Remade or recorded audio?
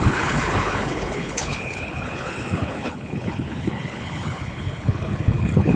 remade